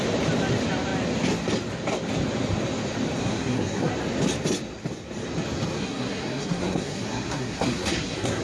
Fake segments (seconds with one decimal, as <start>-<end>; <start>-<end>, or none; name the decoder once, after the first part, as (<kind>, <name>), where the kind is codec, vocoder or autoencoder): 3.2-3.9 (codec, SNAC); 5.8-8.4